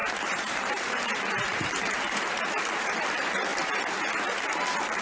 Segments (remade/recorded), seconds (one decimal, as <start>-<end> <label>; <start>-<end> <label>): 0.0-3.0 remade; 3.0-5.0 recorded